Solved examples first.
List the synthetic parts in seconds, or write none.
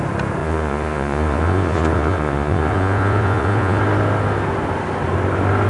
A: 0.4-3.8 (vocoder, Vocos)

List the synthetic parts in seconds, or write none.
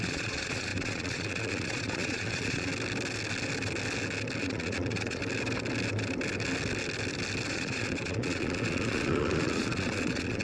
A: 0.0-2.7 (vocoder, Vocos); 4.4-5.2; 7.5-10.4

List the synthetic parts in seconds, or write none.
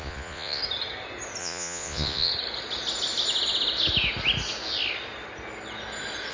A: 0.0-0.6 (vocoder, Vocos); 1.4-2.3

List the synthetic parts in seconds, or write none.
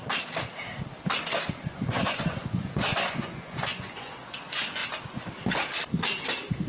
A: 1.6-4.8 (vocoder, Vocos)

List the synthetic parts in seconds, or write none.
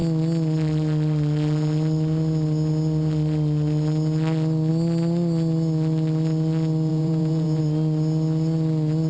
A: 6.9-7.6 (vocoder, Vocos)